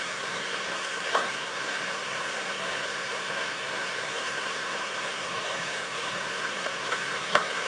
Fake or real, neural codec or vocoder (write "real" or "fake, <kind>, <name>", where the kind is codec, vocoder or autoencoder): fake, codec, SNAC